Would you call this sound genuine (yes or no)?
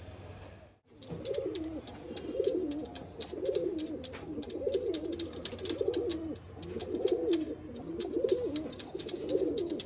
yes